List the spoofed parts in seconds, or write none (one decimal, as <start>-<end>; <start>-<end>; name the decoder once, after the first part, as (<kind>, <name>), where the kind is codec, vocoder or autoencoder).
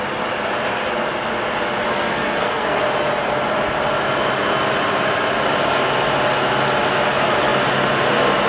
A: 1.9-2.8 (codec, SNAC)